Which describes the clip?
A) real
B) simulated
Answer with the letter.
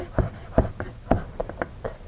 A